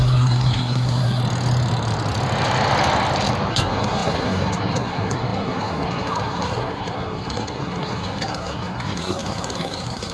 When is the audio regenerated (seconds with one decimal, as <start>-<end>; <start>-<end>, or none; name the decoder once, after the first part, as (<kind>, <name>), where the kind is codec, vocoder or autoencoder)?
0.0-1.2 (codec, SNAC); 3.5-10.1